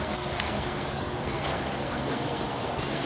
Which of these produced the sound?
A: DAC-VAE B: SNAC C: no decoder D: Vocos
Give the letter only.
B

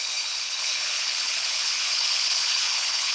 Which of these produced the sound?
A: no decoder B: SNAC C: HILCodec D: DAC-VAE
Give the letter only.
C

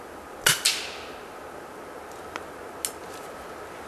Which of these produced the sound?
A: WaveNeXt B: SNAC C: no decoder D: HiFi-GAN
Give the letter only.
C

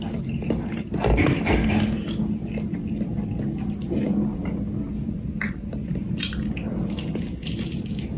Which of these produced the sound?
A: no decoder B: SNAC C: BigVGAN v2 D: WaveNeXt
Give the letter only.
A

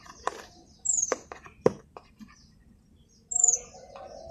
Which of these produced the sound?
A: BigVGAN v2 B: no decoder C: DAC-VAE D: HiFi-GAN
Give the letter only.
B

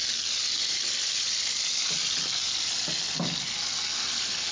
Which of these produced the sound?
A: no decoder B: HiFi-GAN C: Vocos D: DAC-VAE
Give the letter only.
A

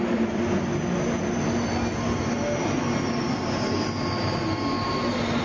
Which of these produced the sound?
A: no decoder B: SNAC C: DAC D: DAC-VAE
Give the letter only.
A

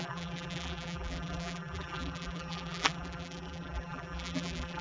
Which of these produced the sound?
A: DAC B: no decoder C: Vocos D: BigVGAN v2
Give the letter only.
D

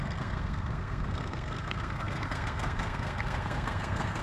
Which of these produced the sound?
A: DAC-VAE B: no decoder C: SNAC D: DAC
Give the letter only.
C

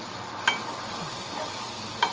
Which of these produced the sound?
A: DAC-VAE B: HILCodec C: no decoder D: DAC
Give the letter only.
C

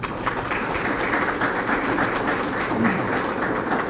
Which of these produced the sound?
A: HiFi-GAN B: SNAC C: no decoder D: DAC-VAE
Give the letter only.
C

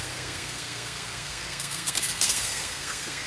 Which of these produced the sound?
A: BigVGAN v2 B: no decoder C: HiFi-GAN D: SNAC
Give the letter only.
D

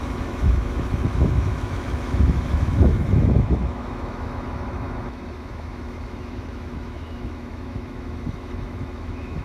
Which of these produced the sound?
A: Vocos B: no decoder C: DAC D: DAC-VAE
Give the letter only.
D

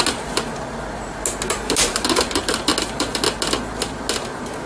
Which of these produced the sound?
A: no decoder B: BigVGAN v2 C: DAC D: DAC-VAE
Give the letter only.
A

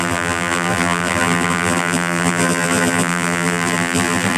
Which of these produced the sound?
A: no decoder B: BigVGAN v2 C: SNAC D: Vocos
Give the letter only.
B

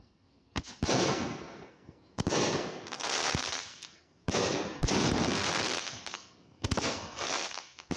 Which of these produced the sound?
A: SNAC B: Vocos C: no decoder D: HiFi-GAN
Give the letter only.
A